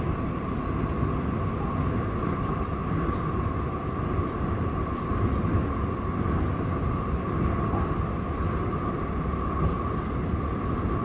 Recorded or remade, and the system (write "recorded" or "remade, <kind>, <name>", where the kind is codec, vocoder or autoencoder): recorded